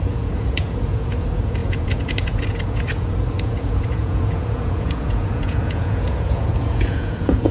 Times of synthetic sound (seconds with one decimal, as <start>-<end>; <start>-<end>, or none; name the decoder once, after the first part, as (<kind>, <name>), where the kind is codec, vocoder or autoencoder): 0.0-7.5 (vocoder, Vocos)